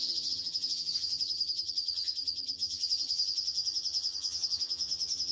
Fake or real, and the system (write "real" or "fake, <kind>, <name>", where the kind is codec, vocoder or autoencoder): fake, vocoder, HiFi-GAN